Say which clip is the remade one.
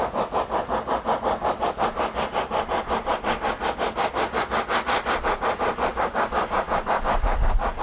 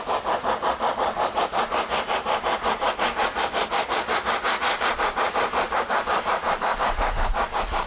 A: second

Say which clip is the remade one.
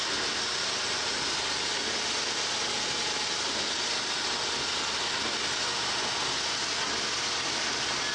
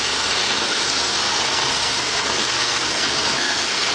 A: second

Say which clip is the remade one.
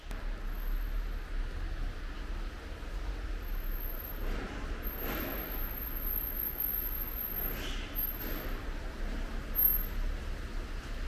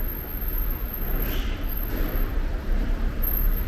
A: second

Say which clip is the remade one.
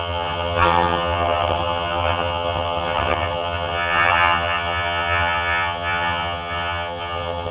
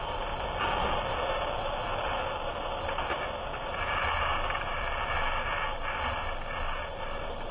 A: first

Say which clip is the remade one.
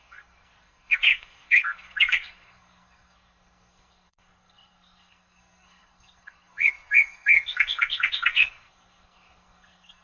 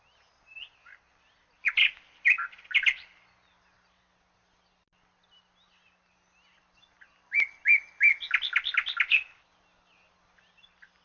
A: first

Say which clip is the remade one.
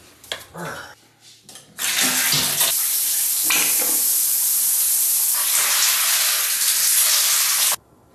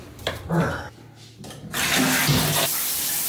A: second